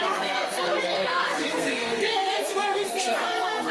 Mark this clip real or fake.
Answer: fake